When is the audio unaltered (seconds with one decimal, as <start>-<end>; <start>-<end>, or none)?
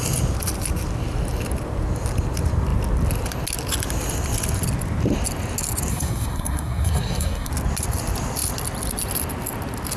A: 0.0-5.9; 7.5-10.0